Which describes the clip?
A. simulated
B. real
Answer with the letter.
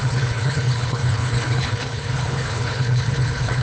A